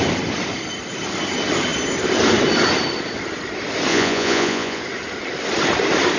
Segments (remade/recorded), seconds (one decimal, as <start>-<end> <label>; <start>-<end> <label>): 0.0-3.9 recorded; 3.9-4.8 remade; 4.8-6.2 recorded